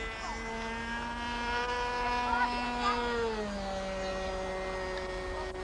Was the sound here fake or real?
real